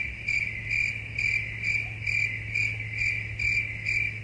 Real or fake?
real